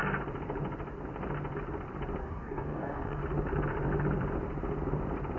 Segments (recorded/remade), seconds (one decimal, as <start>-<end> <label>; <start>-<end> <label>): 0.0-2.2 recorded; 2.2-3.2 remade; 3.2-5.4 recorded